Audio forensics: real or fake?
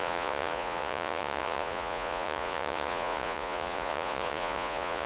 fake